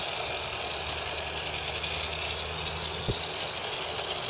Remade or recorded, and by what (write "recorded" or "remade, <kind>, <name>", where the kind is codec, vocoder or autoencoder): recorded